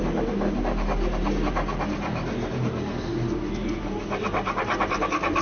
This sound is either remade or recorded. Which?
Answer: recorded